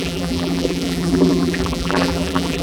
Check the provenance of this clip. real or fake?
fake